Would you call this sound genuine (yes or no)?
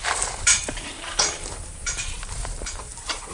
no